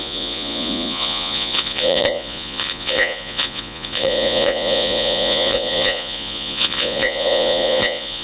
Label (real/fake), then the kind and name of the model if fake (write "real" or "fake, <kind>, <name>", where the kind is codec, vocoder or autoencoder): fake, vocoder, Vocos